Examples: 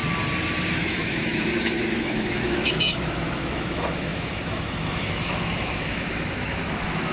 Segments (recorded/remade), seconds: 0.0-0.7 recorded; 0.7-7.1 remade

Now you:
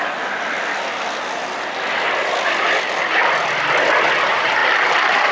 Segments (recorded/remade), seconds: 0.0-5.3 recorded

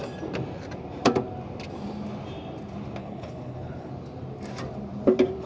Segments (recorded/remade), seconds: 0.0-3.0 recorded; 3.0-3.9 remade; 3.9-5.5 recorded

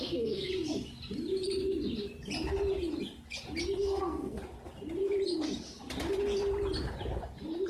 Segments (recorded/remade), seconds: 0.0-0.5 remade; 0.5-3.8 recorded; 3.8-4.4 remade; 4.4-7.7 recorded

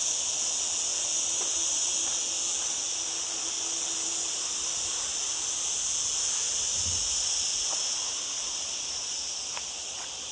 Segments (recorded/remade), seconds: 0.0-6.6 recorded; 6.6-9.6 remade; 9.6-10.3 recorded

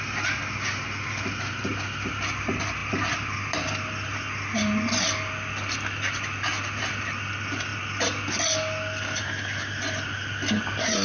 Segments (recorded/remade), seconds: 0.0-1.7 recorded; 1.7-2.4 remade; 2.4-11.0 recorded

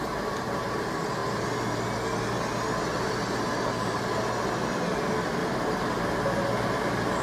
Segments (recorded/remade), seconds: 0.0-5.4 recorded; 5.4-6.2 remade; 6.2-7.2 recorded